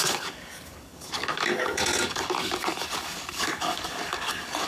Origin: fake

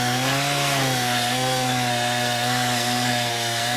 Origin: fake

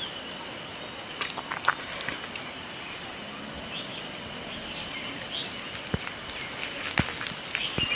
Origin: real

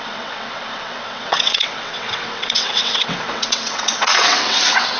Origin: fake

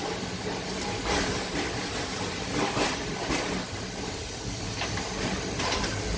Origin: real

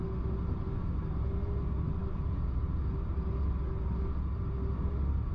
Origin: real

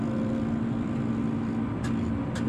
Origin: real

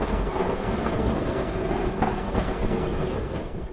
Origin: fake